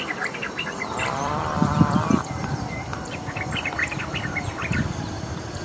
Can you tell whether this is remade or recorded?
remade